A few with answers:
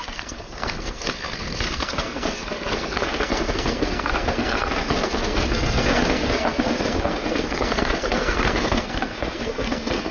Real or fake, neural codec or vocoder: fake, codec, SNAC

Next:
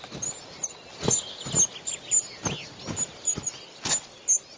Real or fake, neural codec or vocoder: real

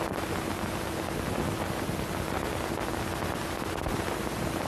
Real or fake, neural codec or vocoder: real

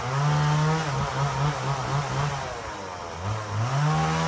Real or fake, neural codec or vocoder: real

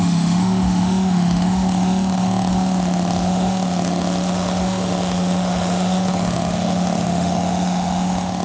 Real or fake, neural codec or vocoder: fake, autoencoder, DAC-VAE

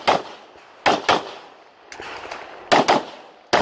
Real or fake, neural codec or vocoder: real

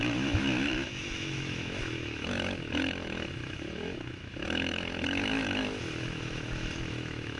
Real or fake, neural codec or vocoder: fake, autoencoder, DAC-VAE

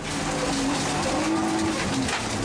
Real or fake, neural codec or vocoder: real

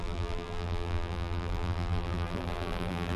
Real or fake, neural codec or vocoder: fake, vocoder, BigVGAN v2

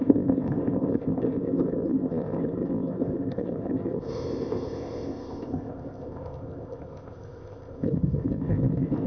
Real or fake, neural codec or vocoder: fake, codec, ZipCodec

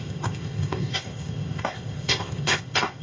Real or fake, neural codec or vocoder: fake, codec, ZipCodec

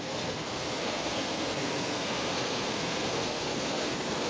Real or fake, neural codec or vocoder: fake, codec, SNAC